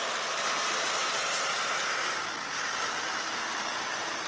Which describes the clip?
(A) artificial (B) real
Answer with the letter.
B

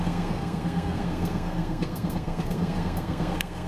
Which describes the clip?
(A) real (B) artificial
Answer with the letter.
B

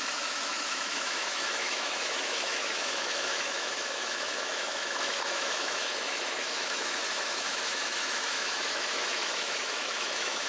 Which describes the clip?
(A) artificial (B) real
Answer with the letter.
A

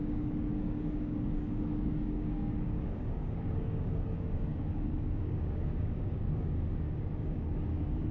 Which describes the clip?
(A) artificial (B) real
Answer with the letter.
A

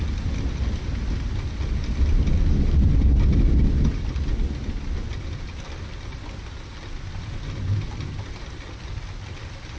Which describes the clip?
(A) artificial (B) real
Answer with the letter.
B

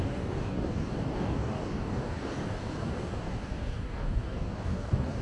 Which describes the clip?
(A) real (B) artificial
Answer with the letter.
B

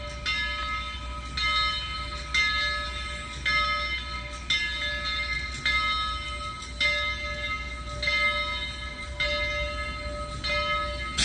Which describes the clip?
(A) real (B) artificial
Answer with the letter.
A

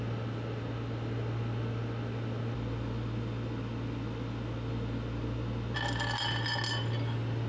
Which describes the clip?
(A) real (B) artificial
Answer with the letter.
A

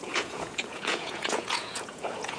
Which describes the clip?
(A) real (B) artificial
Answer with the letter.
B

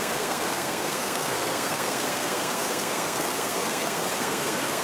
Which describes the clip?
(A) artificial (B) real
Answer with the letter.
A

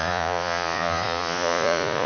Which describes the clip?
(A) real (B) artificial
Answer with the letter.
B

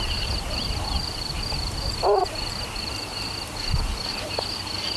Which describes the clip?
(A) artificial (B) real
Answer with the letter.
A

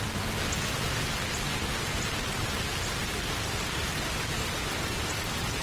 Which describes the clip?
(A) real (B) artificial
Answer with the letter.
A